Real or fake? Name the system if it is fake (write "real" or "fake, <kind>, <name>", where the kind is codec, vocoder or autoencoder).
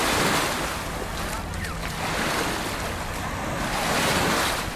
real